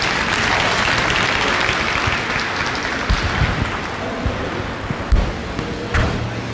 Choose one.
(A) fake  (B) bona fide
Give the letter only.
B